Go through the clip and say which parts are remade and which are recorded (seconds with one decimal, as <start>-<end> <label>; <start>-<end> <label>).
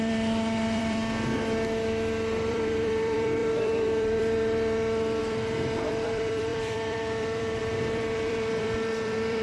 0.0-1.0 remade; 1.0-2.5 recorded; 2.5-9.4 remade